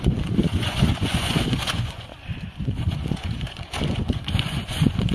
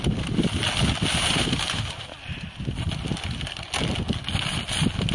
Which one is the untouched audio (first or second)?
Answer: second